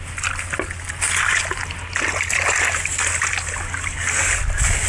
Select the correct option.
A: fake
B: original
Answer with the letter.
B